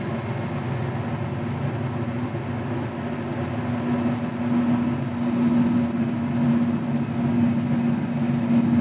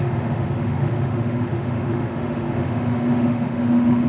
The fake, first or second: second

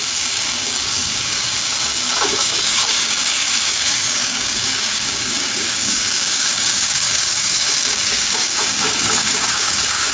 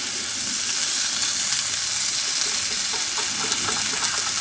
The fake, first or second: first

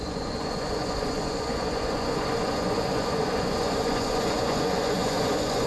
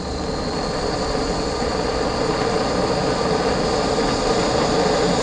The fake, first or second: first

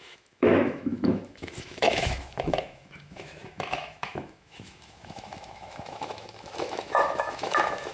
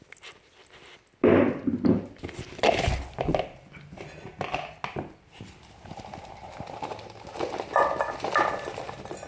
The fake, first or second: first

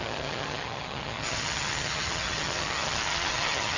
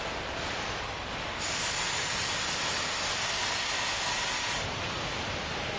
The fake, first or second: first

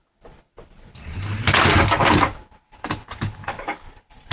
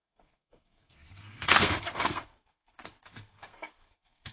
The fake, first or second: second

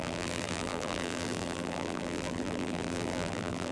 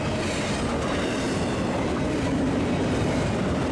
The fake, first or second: first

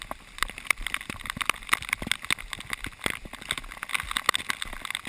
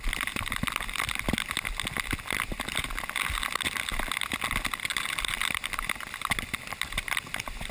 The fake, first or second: second